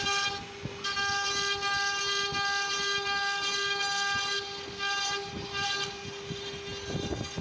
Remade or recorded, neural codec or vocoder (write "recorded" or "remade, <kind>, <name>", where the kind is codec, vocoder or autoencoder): recorded